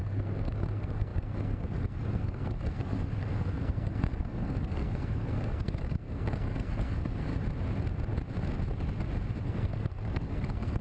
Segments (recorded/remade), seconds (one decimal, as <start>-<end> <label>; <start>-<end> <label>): 0.0-7.3 remade; 7.3-9.4 recorded; 9.4-10.8 remade